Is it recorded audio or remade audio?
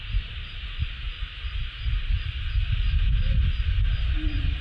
remade